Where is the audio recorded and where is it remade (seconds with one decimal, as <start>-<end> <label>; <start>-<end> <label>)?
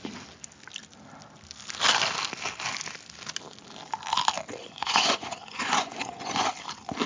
0.0-4.6 recorded; 4.6-6.5 remade; 6.5-7.1 recorded